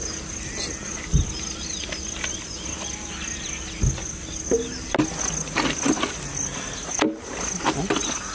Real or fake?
real